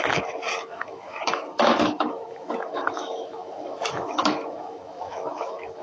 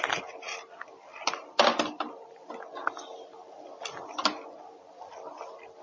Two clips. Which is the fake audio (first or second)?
first